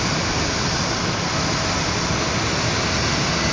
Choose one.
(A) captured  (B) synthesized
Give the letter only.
A